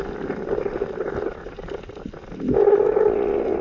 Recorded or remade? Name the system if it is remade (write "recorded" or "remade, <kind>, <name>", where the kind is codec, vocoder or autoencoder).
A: recorded